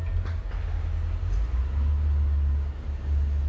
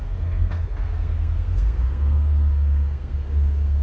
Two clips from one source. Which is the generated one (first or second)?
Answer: second